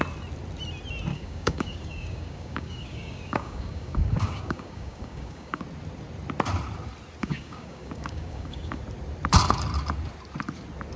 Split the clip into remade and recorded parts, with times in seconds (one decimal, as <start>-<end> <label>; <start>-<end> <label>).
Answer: 0.0-1.1 recorded; 1.1-5.6 remade; 5.6-7.2 recorded; 7.2-8.8 remade; 8.8-11.0 recorded